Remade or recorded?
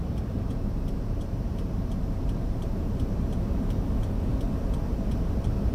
remade